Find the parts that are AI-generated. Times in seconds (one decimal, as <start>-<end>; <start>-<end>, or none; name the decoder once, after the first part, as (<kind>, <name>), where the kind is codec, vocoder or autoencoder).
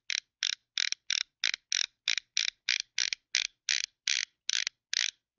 none